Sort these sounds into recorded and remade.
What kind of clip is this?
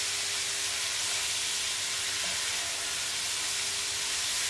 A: recorded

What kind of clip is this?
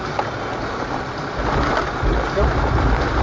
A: recorded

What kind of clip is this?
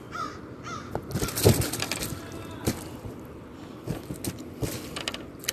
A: recorded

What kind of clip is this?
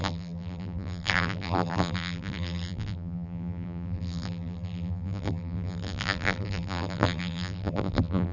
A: remade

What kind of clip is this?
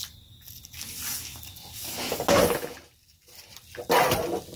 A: recorded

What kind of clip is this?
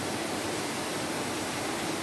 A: remade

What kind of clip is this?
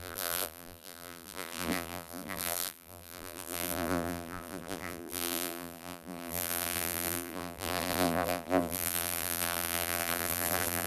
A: remade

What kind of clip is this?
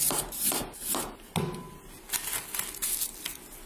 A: recorded